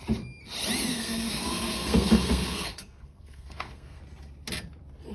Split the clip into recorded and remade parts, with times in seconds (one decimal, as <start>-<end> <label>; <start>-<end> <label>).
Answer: 0.0-0.9 recorded; 0.9-4.0 remade; 4.0-5.1 recorded